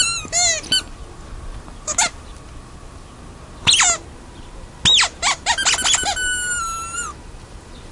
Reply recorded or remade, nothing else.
recorded